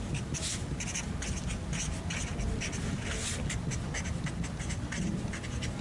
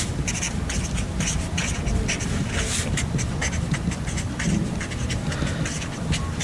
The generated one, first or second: second